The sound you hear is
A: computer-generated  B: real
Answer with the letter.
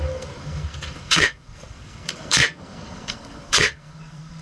A